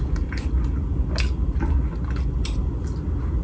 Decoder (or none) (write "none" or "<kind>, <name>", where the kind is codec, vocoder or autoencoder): none